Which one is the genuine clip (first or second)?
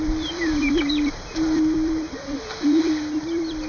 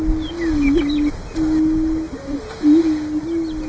second